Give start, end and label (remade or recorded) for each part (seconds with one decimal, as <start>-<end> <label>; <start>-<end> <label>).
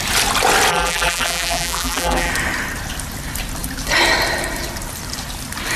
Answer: 0.0-0.7 recorded; 0.7-2.3 remade; 2.3-5.8 recorded